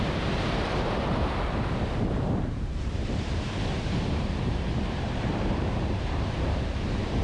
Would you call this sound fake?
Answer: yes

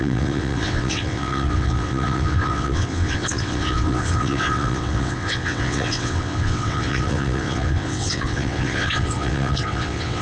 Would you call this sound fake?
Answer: yes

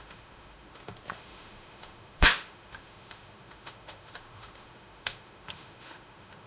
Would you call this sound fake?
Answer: yes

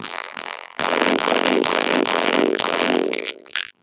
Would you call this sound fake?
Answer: yes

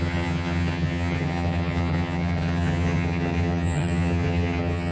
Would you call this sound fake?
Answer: yes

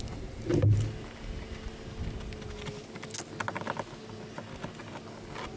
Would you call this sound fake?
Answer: no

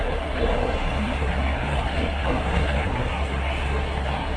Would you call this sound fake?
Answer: yes